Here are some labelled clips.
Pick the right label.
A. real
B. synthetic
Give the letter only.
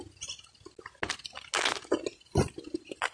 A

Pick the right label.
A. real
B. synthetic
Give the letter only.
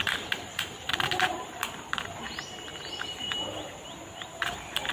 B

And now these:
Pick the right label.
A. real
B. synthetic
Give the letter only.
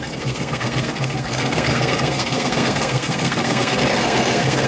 B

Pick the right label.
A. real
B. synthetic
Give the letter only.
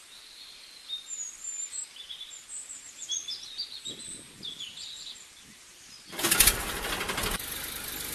A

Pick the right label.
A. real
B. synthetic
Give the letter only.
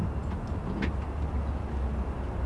A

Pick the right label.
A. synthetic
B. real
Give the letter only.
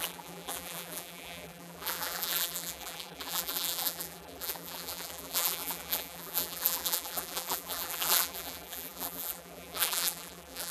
A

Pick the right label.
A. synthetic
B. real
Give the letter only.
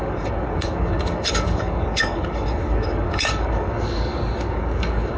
A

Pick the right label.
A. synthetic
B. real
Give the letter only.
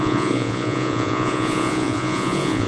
A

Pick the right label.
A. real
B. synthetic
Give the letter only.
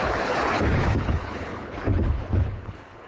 B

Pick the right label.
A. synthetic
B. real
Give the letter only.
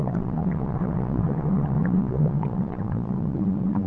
A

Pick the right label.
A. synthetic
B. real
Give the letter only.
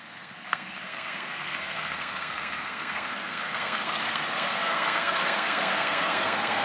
A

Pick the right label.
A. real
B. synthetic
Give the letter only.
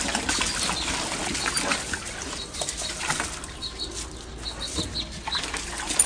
A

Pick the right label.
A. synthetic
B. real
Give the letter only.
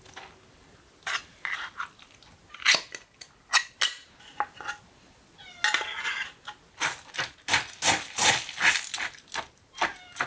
B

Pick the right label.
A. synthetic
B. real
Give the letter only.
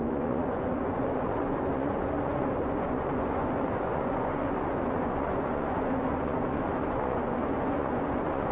A